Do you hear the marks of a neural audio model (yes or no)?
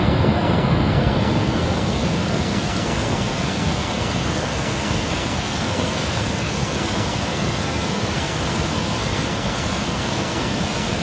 yes